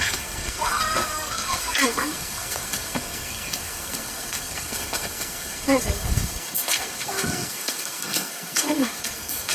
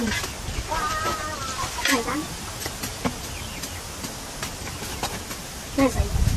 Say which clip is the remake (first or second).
first